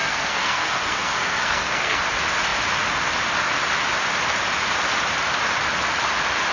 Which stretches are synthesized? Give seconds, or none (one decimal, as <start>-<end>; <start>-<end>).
0.0-2.0